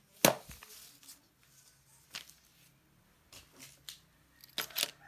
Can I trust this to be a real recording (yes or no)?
yes